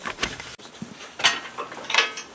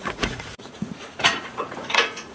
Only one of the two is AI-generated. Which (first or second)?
second